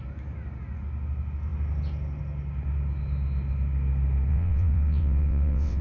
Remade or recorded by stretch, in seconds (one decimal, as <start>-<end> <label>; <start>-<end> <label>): 0.0-4.3 recorded; 4.3-5.8 remade